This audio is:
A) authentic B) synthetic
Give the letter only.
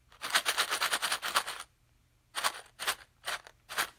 A